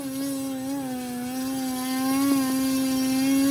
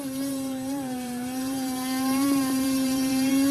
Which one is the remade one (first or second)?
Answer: second